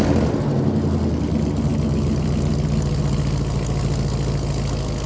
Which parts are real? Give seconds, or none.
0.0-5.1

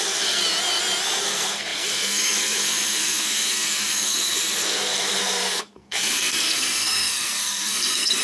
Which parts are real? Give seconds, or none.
0.4-1.2

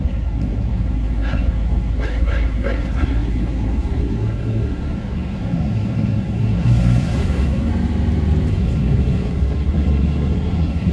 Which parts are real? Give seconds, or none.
7.7-8.5